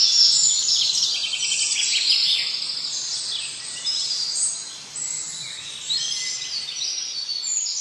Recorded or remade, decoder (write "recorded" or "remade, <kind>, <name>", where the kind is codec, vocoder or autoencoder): recorded